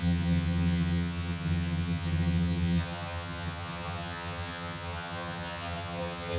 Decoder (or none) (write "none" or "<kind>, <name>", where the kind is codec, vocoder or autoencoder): vocoder, HiFi-GAN